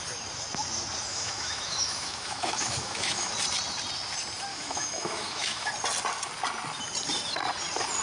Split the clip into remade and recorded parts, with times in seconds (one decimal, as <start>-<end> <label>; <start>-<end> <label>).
0.0-1.1 recorded; 1.1-3.3 remade; 3.3-4.5 recorded; 4.5-5.7 remade; 5.7-8.0 recorded

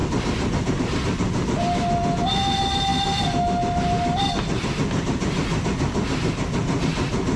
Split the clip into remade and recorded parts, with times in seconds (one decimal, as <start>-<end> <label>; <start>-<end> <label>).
0.0-7.4 recorded

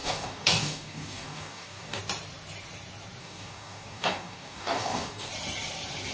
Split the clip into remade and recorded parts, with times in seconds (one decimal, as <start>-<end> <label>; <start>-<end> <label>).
0.0-2.0 remade; 2.0-3.2 recorded; 3.2-5.3 remade; 5.3-6.1 recorded

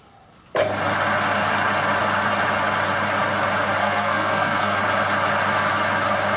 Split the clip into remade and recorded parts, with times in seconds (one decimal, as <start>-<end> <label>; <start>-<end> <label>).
0.0-3.8 recorded; 3.8-4.8 remade; 4.8-6.4 recorded